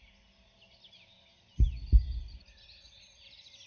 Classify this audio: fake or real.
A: real